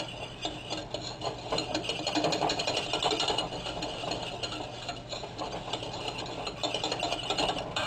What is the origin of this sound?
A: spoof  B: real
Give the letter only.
B